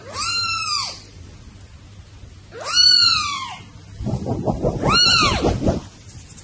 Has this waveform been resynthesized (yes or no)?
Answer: no